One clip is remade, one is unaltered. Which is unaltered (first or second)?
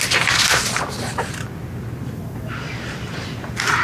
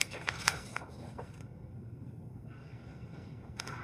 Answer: first